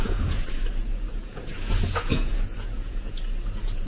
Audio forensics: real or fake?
fake